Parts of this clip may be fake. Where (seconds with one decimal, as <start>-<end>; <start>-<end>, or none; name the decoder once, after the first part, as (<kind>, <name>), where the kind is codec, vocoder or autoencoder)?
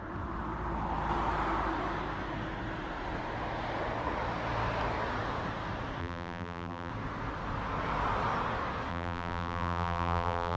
6.0-6.9 (vocoder, BigVGAN v2); 8.9-10.6